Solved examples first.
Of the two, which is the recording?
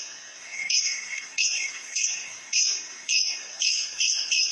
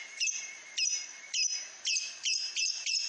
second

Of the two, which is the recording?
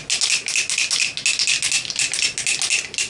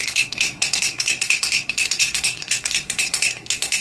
first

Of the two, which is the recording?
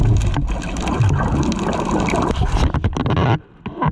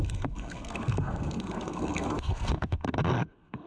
first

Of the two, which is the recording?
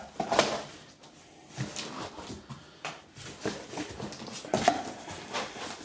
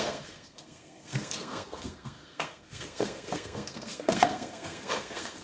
first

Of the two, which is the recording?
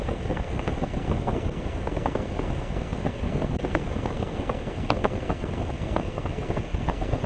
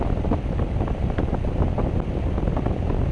second